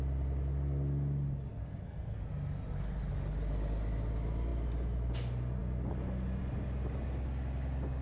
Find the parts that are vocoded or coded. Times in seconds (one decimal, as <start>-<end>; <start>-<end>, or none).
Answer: 1.6-2.2